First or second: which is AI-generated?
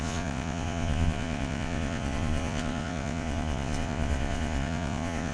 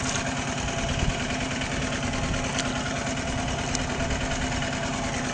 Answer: first